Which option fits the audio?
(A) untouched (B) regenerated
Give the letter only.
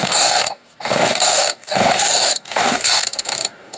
B